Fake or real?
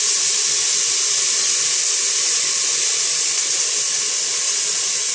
real